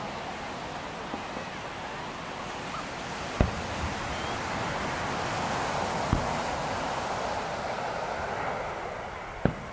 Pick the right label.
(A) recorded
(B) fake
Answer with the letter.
A